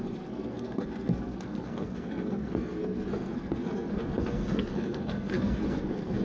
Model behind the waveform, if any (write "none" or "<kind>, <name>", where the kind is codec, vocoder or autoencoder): codec, SNAC